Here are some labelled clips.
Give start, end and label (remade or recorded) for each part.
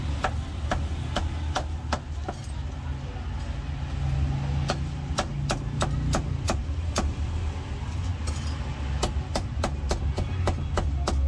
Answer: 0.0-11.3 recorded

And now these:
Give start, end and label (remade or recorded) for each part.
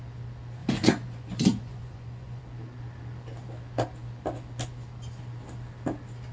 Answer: 0.0-0.6 recorded; 0.6-2.4 remade; 2.4-6.3 recorded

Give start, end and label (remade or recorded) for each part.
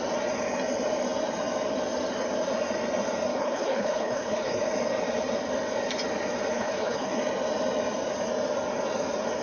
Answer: 0.0-3.3 recorded; 3.3-4.6 remade; 4.6-6.5 recorded; 6.5-7.2 remade; 7.2-9.4 recorded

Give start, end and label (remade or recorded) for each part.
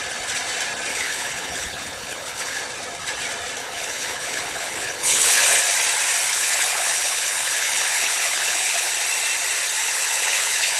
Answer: 0.0-0.9 recorded; 0.9-2.6 remade; 2.6-3.6 recorded; 3.6-5.6 remade; 5.6-6.3 recorded; 6.3-8.9 remade; 8.9-9.8 recorded; 9.8-10.8 remade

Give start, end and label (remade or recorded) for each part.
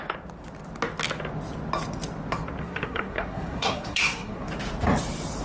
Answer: 0.0-2.6 recorded; 2.6-4.5 remade; 4.5-5.4 recorded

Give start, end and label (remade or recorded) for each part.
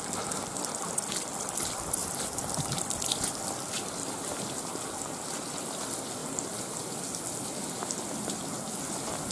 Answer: 0.0-2.0 recorded; 2.0-2.8 remade; 2.8-4.0 recorded; 4.0-4.6 remade; 4.6-9.3 recorded